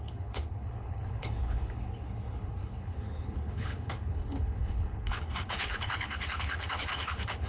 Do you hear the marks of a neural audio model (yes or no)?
yes